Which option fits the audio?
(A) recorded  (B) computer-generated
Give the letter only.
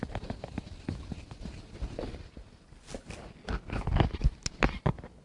A